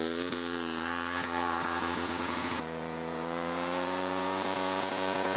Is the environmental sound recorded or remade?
remade